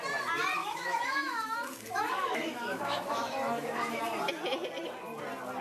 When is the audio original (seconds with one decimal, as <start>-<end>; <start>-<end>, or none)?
0.0-0.6; 4.0-5.6